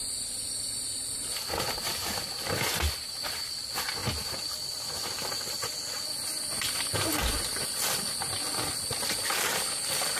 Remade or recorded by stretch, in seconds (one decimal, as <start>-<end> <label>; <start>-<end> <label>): 0.0-10.2 recorded